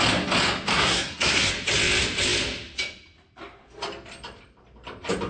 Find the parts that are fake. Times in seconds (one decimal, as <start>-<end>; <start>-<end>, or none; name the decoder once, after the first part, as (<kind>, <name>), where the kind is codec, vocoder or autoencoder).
0.7-1.5 (codec, SNAC)